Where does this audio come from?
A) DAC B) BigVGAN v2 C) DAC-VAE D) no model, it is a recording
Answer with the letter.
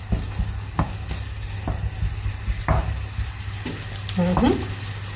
D